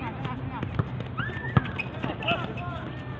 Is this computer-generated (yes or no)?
no